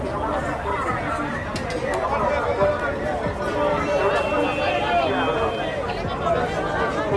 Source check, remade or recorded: recorded